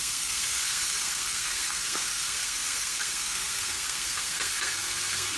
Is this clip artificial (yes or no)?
yes